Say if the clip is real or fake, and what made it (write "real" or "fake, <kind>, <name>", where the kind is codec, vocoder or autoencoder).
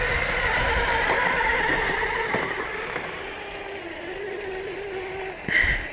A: real